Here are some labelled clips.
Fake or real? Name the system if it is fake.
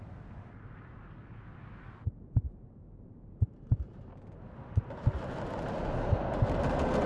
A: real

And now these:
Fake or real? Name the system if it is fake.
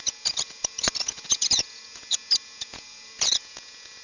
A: fake, vocoder, Vocos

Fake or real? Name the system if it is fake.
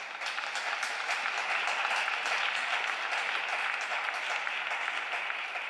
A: real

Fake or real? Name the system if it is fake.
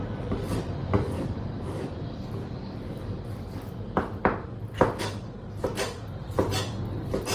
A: real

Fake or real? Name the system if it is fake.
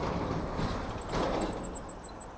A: real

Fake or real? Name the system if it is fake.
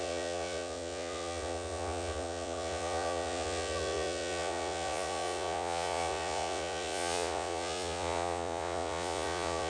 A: fake, vocoder, Vocos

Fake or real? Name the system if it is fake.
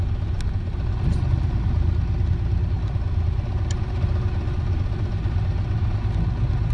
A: real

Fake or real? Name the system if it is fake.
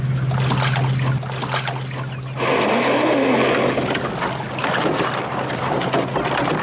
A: real